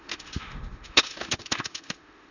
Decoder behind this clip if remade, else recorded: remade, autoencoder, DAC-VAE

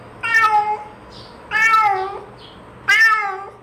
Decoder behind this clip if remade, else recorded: recorded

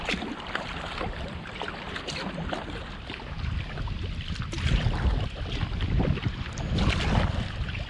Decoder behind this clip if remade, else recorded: recorded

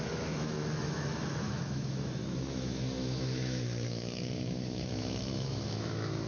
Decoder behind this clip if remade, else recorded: remade, autoencoder, DAC-VAE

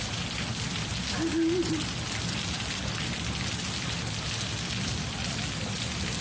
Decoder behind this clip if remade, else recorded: recorded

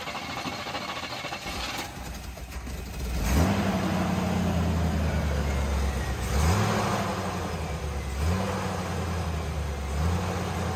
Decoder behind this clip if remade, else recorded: recorded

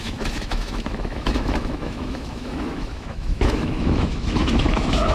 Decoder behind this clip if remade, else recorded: remade, autoencoder, DAC-VAE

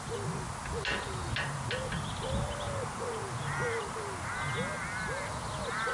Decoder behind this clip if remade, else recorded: recorded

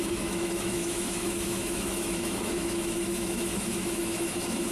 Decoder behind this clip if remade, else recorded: remade, autoencoder, DAC-VAE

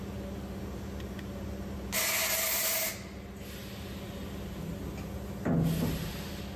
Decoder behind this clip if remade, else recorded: recorded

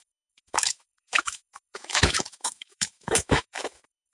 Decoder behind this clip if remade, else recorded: remade, autoencoder, DAC-VAE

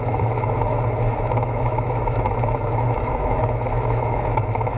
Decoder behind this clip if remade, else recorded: remade, autoencoder, DAC-VAE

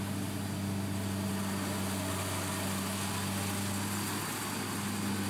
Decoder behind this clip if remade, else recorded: recorded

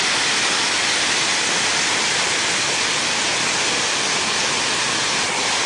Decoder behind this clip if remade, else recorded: recorded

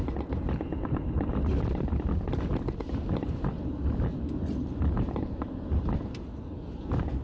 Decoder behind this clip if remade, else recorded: recorded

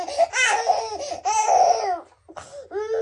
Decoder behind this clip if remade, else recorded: recorded